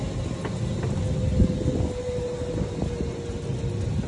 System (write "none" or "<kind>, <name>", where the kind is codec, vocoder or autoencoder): none